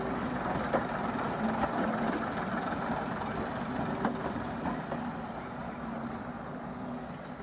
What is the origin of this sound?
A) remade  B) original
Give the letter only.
B